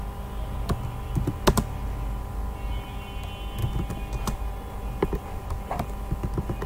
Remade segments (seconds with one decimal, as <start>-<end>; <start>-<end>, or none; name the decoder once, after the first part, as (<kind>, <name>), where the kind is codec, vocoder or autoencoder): none